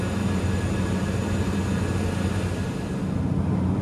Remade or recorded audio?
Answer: recorded